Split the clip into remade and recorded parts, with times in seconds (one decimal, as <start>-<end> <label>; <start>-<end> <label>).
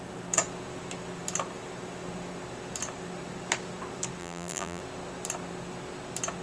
0.0-4.2 recorded; 4.2-4.8 remade; 4.8-6.4 recorded